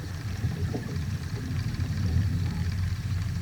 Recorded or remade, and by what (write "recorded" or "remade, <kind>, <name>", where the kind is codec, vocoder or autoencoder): remade, vocoder, BigVGAN v2